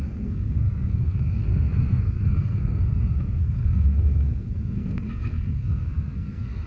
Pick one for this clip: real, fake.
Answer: fake